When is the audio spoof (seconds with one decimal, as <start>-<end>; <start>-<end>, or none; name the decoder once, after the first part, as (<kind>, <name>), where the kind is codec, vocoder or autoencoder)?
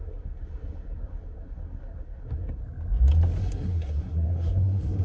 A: 0.0-2.6 (codec, SNAC); 3.4-5.0